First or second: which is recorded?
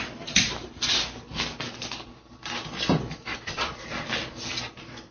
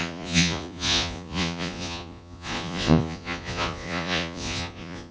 first